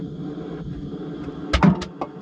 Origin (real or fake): real